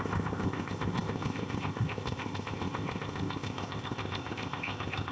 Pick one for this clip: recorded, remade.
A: remade